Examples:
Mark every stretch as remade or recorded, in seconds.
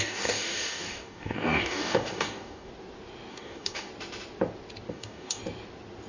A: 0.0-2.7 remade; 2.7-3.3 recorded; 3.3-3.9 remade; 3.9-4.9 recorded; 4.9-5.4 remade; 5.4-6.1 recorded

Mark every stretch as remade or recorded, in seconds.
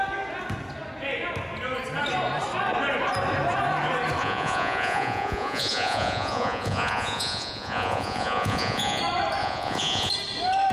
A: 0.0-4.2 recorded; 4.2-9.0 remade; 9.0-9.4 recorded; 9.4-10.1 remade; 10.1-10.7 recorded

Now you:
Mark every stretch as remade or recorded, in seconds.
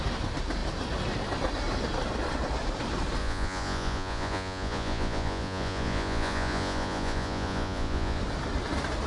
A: 0.0-3.2 recorded; 3.2-8.2 remade; 8.2-9.1 recorded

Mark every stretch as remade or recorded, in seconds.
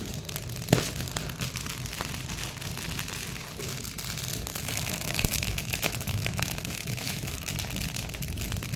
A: 0.0-4.5 recorded; 4.5-7.5 remade; 7.5-8.8 recorded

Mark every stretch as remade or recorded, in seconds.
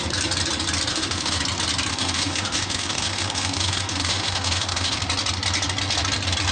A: 0.0-0.9 recorded; 0.9-1.4 remade; 1.4-1.9 recorded; 1.9-5.0 remade; 5.0-6.5 recorded